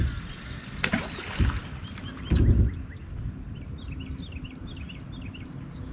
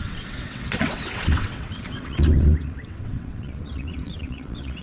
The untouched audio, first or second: first